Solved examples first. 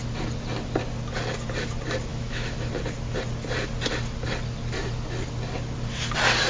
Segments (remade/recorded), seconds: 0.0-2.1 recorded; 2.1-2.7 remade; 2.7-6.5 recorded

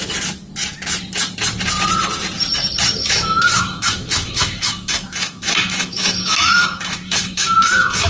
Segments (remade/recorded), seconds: 0.0-3.0 recorded; 3.0-8.1 remade

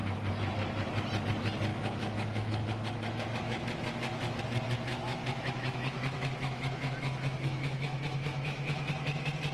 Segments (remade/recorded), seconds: 0.0-1.7 recorded; 1.7-4.4 remade; 4.4-4.9 recorded; 4.9-8.9 remade; 8.9-9.5 recorded

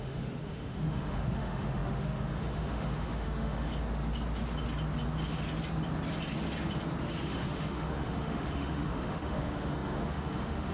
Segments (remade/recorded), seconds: 0.0-3.7 remade; 3.7-7.0 recorded; 7.0-10.7 remade